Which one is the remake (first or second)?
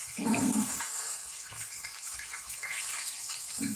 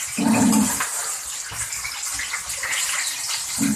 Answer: first